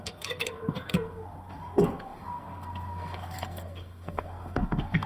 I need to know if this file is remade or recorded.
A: remade